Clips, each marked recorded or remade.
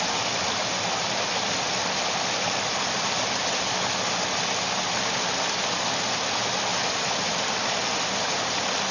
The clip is recorded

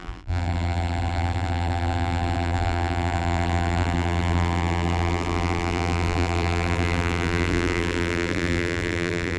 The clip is remade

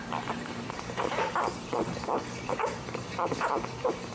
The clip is remade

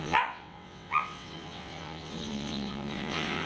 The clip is remade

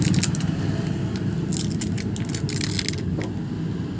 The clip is recorded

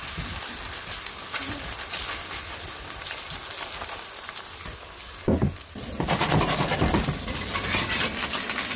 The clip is recorded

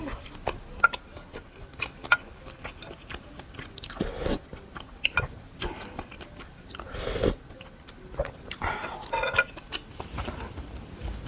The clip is recorded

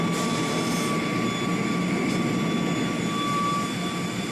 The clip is recorded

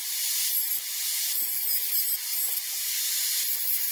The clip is recorded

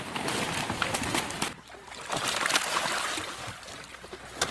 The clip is recorded